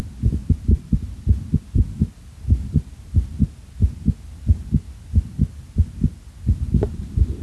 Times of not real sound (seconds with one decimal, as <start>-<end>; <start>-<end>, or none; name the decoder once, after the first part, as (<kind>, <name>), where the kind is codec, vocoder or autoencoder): 0.4-1.1 (vocoder, BigVGAN v2)